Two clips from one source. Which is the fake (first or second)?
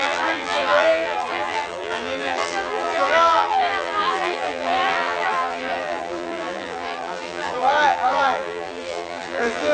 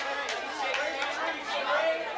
first